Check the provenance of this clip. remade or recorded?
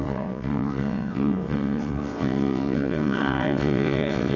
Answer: remade